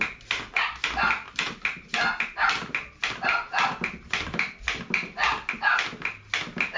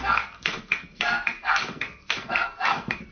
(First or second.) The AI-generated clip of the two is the second